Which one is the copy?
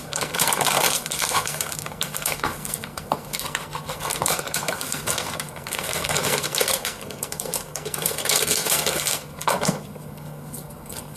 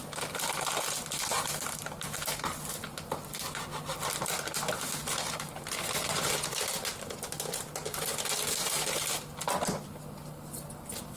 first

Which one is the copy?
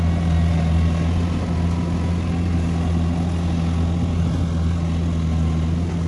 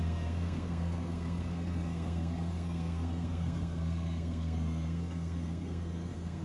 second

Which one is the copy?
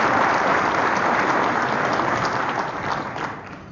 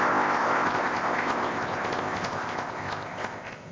second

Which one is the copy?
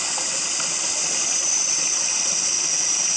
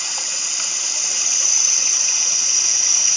second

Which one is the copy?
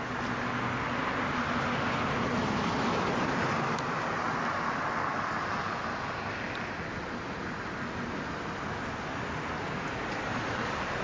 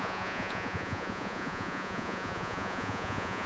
second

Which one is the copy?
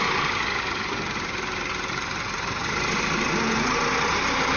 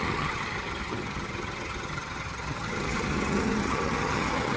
second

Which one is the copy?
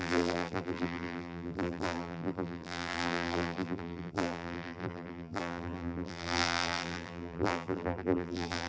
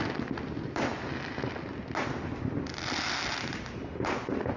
first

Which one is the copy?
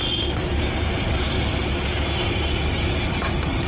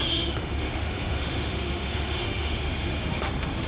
second